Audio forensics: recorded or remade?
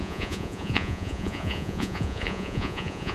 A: remade